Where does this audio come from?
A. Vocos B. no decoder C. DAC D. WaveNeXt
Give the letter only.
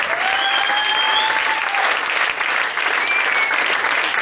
B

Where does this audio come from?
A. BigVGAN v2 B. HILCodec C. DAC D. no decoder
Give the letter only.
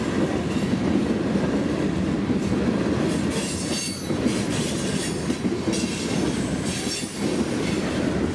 D